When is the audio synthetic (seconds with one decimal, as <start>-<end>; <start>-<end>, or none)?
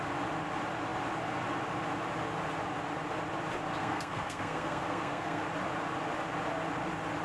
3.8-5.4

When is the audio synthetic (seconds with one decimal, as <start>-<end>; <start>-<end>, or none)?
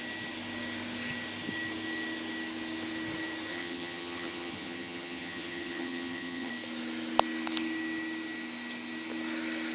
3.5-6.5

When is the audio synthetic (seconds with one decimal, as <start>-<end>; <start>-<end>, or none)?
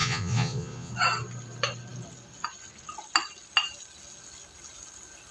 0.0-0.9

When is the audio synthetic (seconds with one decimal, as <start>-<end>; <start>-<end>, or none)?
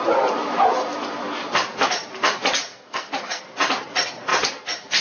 2.7-3.4